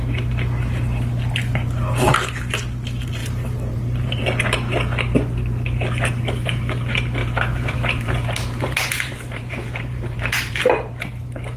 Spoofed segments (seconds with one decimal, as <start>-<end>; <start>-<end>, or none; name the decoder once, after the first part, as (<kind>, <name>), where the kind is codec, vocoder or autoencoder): 3.2-4.2 (vocoder, BigVGAN v2); 7.2-10.6